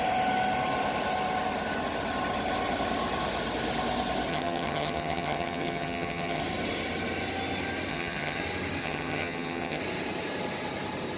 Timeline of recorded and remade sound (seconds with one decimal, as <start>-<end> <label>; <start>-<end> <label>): 0.0-4.3 recorded; 4.3-6.4 remade; 6.4-7.9 recorded; 7.9-8.4 remade; 8.4-8.8 recorded; 8.8-9.8 remade; 9.8-11.2 recorded

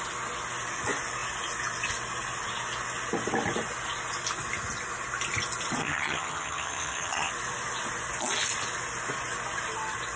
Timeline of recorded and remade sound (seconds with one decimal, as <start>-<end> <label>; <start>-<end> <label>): 0.0-5.8 recorded; 5.8-7.3 remade; 7.3-10.2 recorded

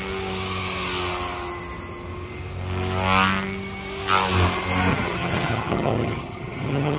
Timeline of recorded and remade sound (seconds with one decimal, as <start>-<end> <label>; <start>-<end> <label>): 0.0-4.9 recorded; 4.9-7.0 remade